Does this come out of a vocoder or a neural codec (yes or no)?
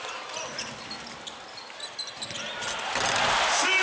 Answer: no